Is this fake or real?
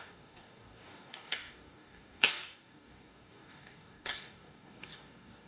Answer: fake